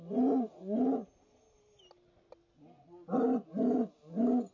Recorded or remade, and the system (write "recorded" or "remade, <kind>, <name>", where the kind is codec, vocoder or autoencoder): recorded